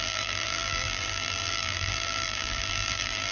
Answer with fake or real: fake